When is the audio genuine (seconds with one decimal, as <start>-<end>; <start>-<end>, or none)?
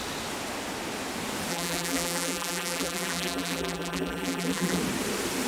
0.0-1.5; 4.8-5.5